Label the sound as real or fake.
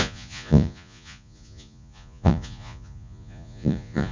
fake